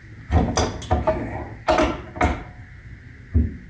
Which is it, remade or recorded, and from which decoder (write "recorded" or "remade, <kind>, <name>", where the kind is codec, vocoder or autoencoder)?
recorded